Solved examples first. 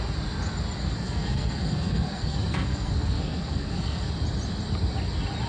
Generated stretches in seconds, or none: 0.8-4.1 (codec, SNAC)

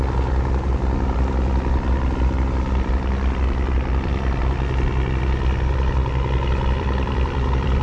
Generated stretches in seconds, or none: 0.0-4.1 (vocoder, BigVGAN v2); 5.2-7.8

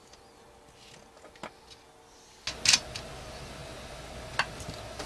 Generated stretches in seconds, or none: none

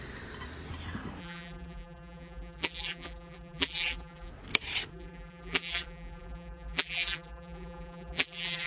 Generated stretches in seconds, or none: 1.2-4.3 (vocoder, BigVGAN v2); 4.9-8.7

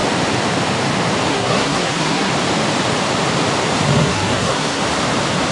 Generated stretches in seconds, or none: 1.3-2.3 (codec, SNAC); 3.9-4.8

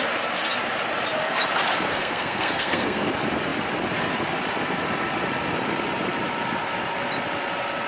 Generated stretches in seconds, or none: 1.9-3.1 (codec, SNAC)

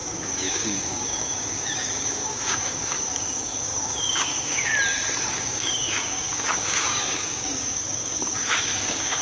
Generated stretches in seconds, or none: 0.0-4.7 (codec, DAC); 5.3-9.2